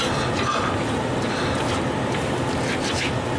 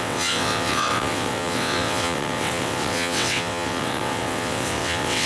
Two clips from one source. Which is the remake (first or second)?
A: second